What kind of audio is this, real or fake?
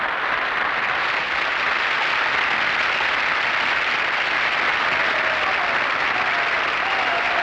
real